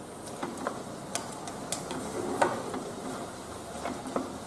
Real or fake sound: real